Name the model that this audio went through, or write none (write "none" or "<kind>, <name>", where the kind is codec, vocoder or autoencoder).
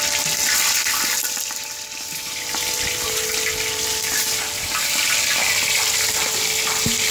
vocoder, BigVGAN v2